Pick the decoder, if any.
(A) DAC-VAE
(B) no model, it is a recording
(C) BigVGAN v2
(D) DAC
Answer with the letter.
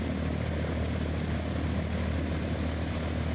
B